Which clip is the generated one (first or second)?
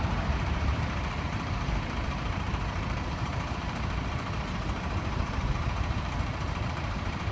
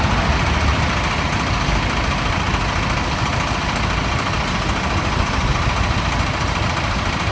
first